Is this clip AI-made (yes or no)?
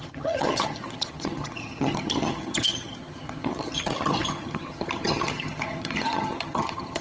yes